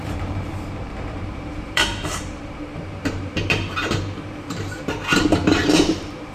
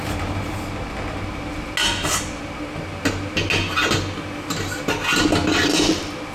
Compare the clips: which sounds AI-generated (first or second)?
first